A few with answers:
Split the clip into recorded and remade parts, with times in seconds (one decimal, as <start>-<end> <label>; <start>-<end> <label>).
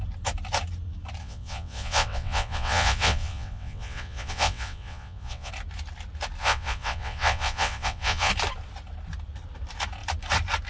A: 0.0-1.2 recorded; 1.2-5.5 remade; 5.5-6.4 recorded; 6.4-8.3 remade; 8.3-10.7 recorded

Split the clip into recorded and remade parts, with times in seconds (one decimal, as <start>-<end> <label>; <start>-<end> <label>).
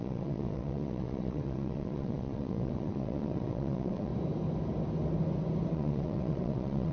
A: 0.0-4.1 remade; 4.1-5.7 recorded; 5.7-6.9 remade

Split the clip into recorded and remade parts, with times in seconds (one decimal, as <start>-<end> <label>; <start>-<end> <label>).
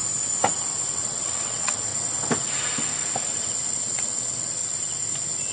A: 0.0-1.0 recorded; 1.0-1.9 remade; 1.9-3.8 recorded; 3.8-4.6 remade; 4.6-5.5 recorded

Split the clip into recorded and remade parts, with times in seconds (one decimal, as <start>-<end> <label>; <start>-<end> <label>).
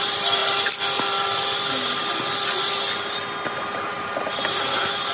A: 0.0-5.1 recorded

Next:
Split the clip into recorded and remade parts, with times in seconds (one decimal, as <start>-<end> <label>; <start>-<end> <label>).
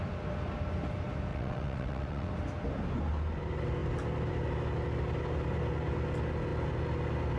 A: 0.0-1.3 recorded; 1.3-2.3 remade; 2.3-7.4 recorded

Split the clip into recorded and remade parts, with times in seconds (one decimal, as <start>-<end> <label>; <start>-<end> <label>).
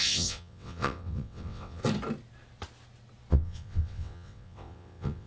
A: 0.0-1.8 remade; 1.8-3.3 recorded; 3.3-5.3 remade